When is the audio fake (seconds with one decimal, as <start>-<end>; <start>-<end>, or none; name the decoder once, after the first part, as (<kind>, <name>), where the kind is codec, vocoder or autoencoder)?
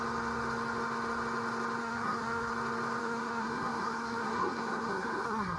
1.8-2.5 (codec, SNAC); 3.0-5.6